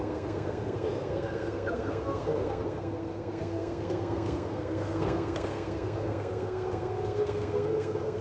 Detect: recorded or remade remade